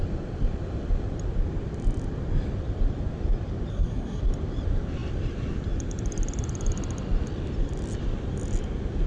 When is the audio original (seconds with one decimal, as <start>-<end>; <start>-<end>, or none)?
0.0-3.7; 4.2-9.1